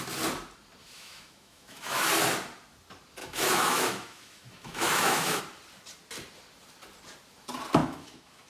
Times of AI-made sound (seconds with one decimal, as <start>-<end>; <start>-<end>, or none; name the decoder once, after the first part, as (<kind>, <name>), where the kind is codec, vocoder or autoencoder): 0.8-2.1 (autoencoder, DAC-VAE); 3.2-5.4; 7.8-8.5